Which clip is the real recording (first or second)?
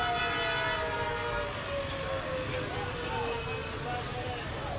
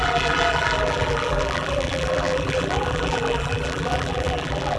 first